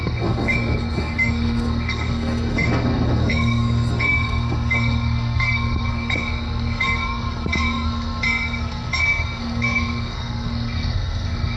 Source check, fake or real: fake